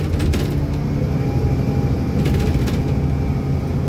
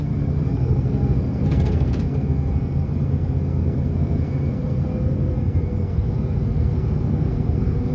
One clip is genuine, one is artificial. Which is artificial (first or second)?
second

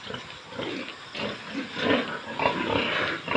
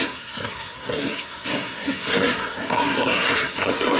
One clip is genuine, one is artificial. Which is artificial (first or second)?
second